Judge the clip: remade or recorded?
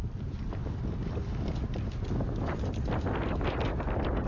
recorded